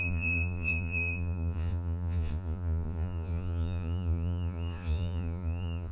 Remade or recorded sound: remade